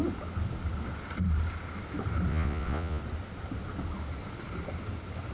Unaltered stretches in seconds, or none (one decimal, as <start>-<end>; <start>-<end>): 0.0-2.3; 3.0-5.3